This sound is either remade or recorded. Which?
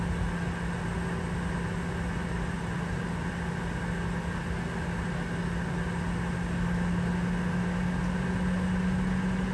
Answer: recorded